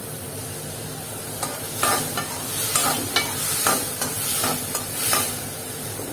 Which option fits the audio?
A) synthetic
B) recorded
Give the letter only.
B